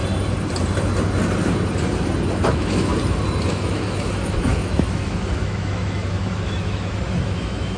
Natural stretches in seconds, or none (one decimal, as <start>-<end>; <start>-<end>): 0.0-2.3; 2.9-3.5